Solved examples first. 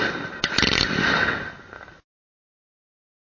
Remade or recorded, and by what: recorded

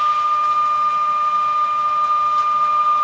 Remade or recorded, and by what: recorded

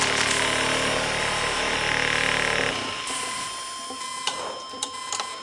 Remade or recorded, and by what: recorded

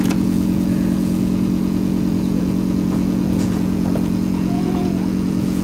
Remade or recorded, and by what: remade, vocoder, Vocos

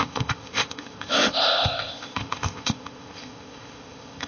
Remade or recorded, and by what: remade, codec, ZipCodec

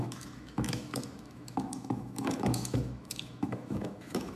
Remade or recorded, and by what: remade, autoencoder, DAC-VAE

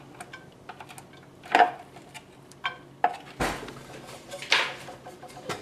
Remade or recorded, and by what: recorded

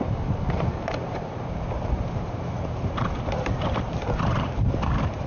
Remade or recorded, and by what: remade, vocoder, BigVGAN v2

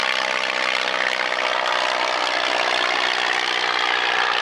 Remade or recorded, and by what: recorded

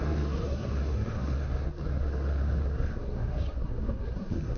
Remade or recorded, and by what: remade, codec, SNAC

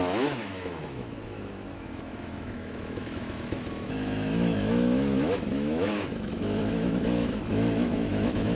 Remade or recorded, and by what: remade, autoencoder, DAC-VAE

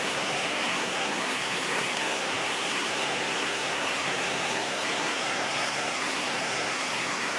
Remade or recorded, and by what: remade, codec, SNAC